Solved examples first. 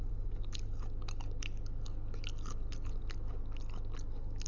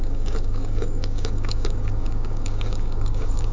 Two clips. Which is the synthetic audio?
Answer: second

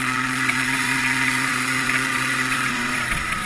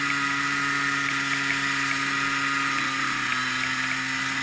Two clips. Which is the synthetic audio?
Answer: first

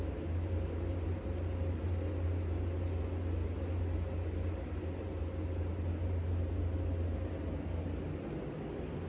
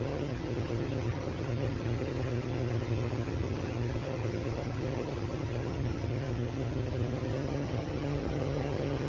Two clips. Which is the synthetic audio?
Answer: second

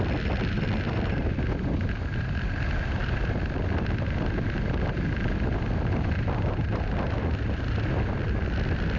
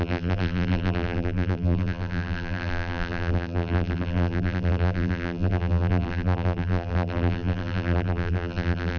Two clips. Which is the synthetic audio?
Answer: second